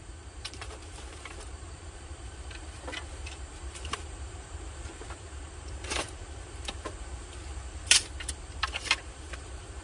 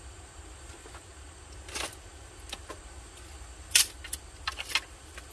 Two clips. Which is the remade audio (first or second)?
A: first